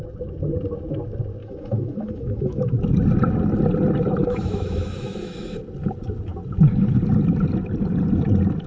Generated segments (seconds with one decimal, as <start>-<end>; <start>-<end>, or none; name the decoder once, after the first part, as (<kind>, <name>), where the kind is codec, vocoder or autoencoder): 1.4-2.7 (autoencoder, DAC-VAE); 4.2-5.6